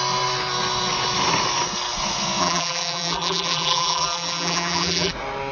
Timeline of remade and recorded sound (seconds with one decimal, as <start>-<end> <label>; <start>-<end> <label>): 0.0-2.4 recorded; 2.4-5.1 remade; 5.1-5.5 recorded